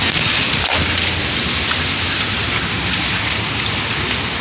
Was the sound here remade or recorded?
recorded